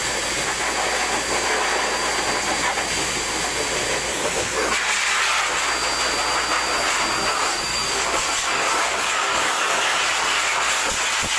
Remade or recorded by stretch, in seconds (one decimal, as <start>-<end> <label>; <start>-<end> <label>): 0.0-4.1 recorded; 4.1-4.7 remade; 4.7-7.3 recorded; 7.3-10.0 remade; 10.0-11.4 recorded